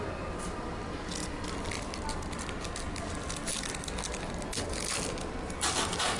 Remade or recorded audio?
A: recorded